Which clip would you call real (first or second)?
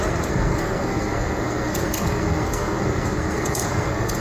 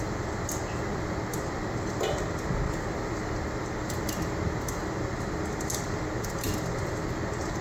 second